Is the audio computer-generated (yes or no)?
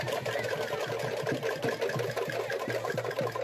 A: no